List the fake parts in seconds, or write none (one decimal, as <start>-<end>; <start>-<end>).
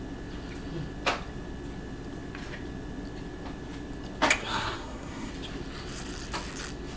4.4-5.3